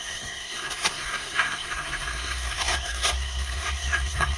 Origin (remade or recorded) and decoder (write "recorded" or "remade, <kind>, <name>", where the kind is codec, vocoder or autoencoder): remade, codec, SNAC